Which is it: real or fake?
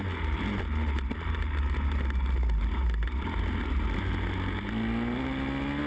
real